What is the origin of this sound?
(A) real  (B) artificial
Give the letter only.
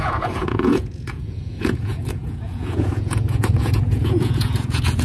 B